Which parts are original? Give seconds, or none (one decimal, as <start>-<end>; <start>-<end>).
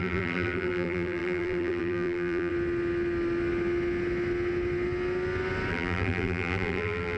2.5-5.7